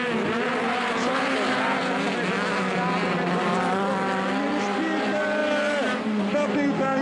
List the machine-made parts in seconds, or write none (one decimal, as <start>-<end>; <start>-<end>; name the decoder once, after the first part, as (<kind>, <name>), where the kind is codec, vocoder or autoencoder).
none

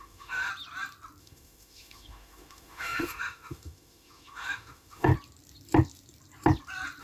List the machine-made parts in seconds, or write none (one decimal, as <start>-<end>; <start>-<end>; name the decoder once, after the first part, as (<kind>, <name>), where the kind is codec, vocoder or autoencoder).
0.0-0.5 (autoencoder, DAC-VAE); 1.2-5.1

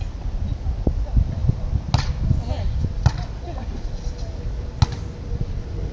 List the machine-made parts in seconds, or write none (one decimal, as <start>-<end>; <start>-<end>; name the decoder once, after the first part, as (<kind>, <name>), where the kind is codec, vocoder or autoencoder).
none

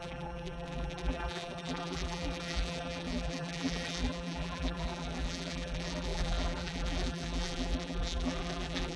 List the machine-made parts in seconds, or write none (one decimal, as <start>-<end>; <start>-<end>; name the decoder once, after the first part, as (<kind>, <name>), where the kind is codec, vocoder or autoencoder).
0.0-9.0 (vocoder, BigVGAN v2)

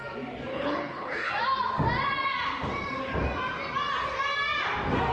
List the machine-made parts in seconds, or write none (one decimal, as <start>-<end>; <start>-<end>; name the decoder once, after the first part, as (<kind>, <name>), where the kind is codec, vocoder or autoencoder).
0.5-1.3 (codec, HILCodec)

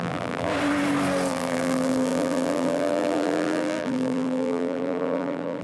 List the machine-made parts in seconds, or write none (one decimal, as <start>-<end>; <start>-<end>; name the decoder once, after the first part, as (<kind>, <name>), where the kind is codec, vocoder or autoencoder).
0.0-0.5 (vocoder, BigVGAN v2); 1.3-5.6